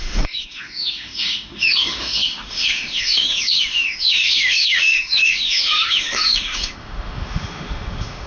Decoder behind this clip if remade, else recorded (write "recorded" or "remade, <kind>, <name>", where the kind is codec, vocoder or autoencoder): remade, autoencoder, DAC-VAE